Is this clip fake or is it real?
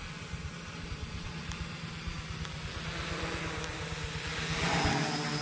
real